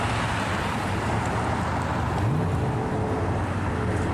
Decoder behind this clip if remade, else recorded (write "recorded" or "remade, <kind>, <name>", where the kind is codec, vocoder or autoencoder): recorded